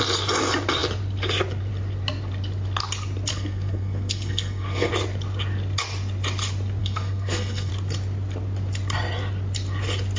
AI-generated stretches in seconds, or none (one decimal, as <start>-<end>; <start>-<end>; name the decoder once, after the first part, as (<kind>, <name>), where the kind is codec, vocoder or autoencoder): 3.3-4.9 (codec, SNAC); 6.8-7.7